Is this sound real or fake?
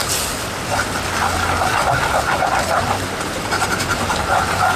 real